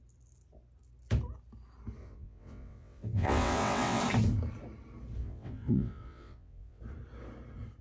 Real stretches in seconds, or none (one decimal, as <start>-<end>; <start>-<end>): 0.0-2.0; 4.0-5.2; 6.8-7.8